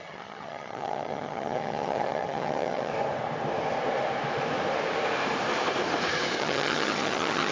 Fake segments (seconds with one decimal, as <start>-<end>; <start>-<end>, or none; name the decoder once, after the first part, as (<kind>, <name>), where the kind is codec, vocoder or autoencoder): 0.0-2.9 (vocoder, HiFi-GAN); 6.4-7.5

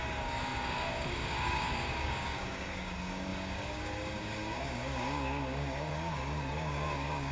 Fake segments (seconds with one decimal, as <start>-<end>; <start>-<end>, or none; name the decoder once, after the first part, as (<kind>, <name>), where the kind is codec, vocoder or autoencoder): 0.0-7.3 (codec, DAC)